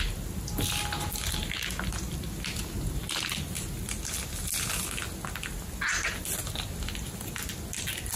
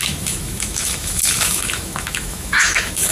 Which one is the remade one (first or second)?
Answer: second